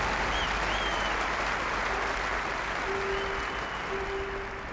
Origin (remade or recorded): recorded